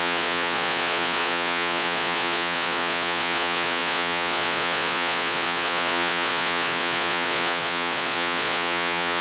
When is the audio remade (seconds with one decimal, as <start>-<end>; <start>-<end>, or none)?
0.0-9.2